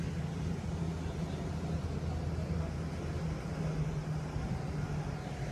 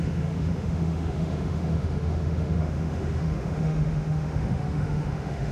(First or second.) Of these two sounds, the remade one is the second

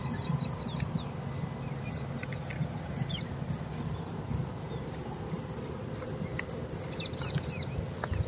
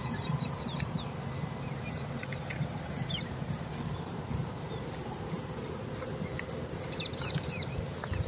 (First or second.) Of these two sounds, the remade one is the second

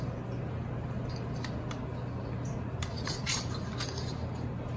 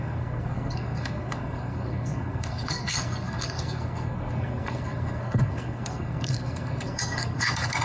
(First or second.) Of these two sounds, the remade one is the second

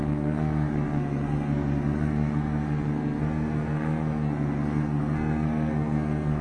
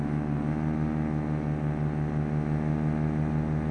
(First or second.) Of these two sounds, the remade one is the first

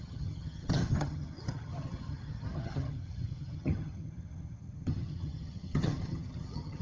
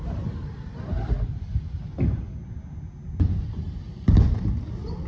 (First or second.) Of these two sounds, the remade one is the first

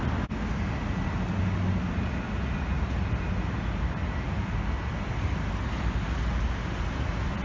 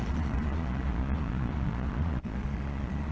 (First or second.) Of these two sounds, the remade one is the second